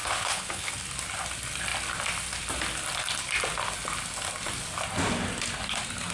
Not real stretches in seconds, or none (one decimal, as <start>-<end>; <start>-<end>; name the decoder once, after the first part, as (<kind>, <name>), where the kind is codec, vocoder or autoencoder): 0.0-0.7 (codec, HILCodec)